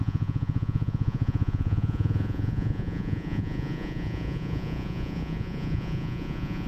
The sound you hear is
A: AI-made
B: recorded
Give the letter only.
A